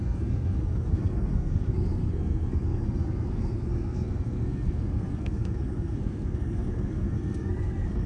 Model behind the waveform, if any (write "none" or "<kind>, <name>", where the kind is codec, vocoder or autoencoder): codec, SNAC